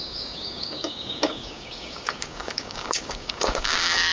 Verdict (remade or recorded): remade